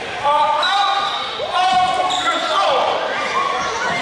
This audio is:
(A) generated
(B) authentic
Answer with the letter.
B